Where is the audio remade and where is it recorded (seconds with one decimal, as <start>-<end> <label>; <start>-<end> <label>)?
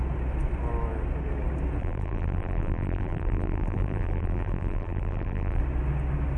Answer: 0.0-1.8 recorded; 1.8-5.6 remade; 5.6-6.4 recorded